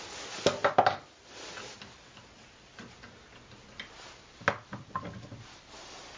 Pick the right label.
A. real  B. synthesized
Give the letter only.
A